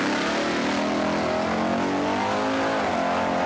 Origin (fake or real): real